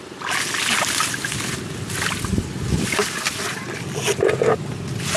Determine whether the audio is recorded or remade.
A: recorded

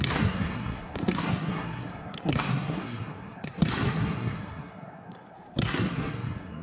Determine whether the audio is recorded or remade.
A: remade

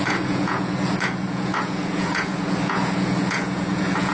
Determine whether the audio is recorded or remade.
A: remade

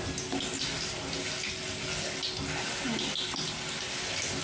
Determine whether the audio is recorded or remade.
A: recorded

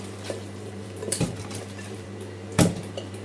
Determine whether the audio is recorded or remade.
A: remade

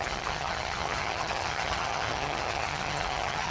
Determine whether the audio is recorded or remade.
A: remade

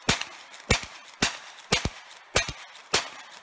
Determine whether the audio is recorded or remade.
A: recorded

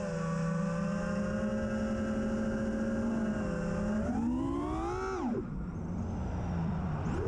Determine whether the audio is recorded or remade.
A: recorded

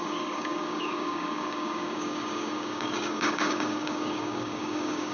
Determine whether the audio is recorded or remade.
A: remade